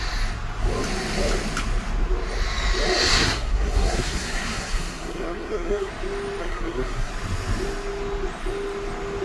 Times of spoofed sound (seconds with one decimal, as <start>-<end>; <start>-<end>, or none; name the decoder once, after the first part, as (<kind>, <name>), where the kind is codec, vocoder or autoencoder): 3.1-5.9 (codec, SNAC); 6.4-7.1